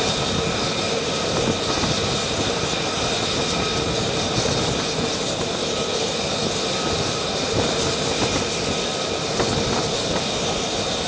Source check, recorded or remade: recorded